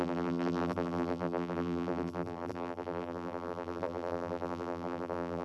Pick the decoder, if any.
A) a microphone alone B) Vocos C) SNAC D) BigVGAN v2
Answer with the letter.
D